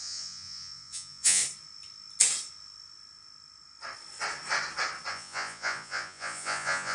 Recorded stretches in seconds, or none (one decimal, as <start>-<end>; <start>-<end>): 1.4-5.1